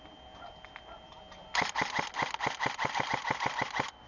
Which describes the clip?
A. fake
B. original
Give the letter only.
B